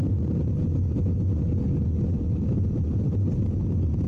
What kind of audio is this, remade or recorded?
remade